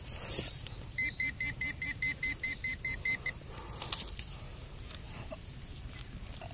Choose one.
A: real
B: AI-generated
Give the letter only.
B